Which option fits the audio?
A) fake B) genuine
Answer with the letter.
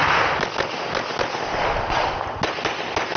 B